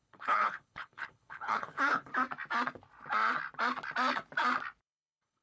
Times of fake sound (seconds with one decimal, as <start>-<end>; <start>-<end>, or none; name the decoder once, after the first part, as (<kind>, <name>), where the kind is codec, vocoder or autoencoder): 0.0-2.1 (codec, HILCodec); 4.8-5.4